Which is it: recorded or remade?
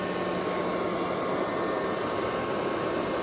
recorded